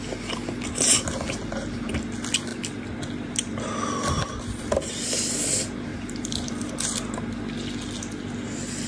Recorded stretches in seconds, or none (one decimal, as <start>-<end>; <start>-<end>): 0.0-5.9; 6.7-8.9